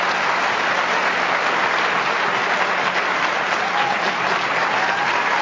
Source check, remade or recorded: recorded